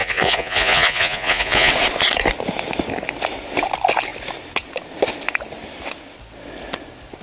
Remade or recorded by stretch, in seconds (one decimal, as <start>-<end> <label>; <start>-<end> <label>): 0.0-1.7 remade; 1.7-7.2 recorded